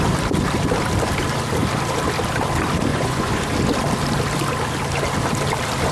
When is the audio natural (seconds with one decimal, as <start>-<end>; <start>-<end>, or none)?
0.0-2.9; 3.4-5.9